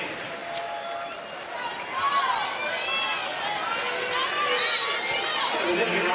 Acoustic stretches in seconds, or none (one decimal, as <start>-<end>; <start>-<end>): 0.0-6.1